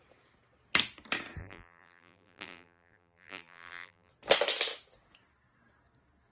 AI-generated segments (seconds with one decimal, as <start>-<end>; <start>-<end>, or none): 1.4-4.1